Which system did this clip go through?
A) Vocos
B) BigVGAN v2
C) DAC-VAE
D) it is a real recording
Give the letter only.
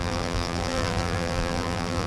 B